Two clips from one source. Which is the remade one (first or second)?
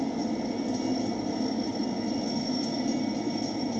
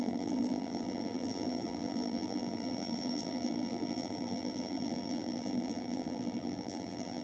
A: second